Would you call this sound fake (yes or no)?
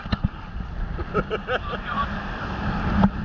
no